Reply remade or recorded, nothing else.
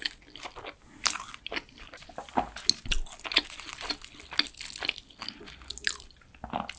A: recorded